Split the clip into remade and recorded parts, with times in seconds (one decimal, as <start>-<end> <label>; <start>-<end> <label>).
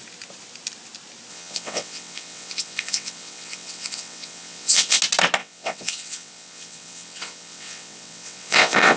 0.0-1.3 recorded; 1.3-5.0 remade; 5.0-5.4 recorded; 5.4-9.0 remade